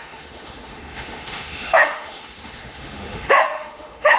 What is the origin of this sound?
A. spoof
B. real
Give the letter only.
A